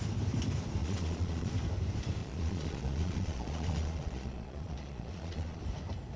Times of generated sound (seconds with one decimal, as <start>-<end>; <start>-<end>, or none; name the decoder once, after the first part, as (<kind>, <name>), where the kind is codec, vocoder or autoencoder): 0.8-1.5 (vocoder, Vocos); 2.2-5.6